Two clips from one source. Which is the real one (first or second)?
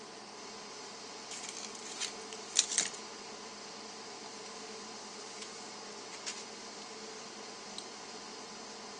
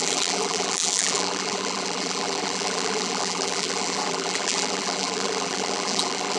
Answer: first